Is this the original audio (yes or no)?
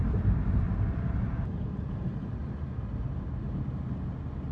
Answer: yes